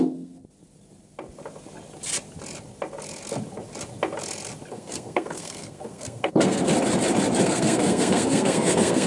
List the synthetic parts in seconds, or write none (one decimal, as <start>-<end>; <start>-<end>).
0.0-0.4; 4.7-6.7; 7.4-9.1